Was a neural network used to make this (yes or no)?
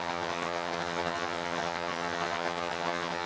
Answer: yes